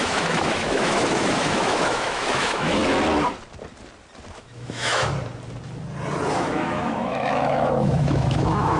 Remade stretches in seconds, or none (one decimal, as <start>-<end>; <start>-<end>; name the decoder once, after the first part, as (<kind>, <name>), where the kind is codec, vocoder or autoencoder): 0.0-2.8 (autoencoder, DAC-VAE); 4.3-5.1; 6.3-8.8